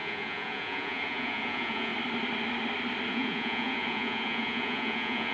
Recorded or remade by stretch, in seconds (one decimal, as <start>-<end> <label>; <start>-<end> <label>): 0.0-1.9 remade; 1.9-3.1 recorded; 3.1-5.3 remade